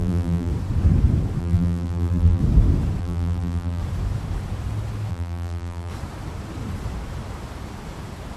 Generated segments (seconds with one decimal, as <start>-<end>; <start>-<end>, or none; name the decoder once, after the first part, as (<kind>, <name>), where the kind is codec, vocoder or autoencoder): 0.0-0.5 (vocoder, BigVGAN v2); 1.4-2.4; 3.0-3.8; 5.1-5.9